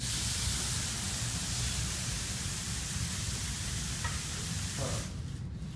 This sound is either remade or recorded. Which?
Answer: recorded